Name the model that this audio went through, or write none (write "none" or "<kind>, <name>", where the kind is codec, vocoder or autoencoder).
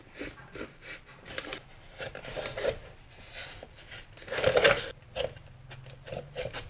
none